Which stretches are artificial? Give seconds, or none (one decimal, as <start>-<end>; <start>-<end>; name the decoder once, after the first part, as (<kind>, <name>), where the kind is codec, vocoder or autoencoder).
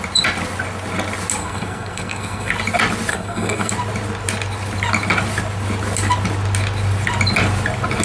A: 1.4-2.5 (codec, SNAC); 3.1-3.7